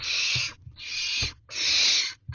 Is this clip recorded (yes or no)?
yes